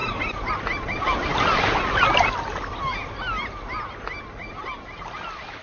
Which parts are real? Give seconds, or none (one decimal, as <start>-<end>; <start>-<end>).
0.0-5.6